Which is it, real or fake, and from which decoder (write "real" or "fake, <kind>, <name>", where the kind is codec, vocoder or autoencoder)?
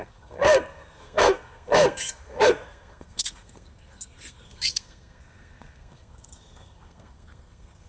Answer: fake, codec, SNAC